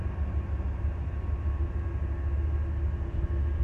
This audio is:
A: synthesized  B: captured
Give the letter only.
B